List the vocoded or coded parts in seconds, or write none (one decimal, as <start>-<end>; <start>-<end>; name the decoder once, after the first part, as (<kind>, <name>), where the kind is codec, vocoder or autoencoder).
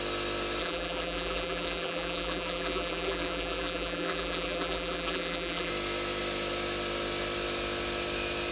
0.6-5.7 (vocoder, BigVGAN v2)